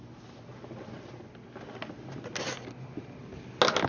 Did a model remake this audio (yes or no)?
no